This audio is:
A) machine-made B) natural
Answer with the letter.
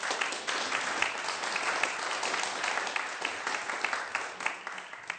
B